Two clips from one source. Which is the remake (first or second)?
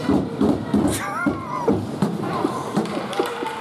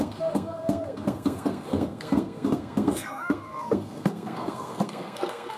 second